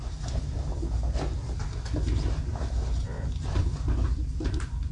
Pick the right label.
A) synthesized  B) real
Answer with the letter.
B